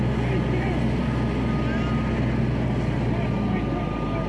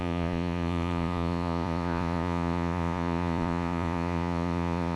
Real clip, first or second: first